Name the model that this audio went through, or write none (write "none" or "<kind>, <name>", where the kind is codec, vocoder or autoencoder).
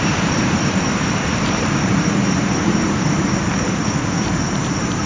vocoder, BigVGAN v2